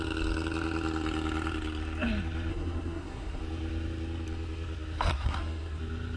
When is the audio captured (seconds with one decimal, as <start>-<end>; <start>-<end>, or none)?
0.0-2.5; 3.4-5.1; 5.8-6.2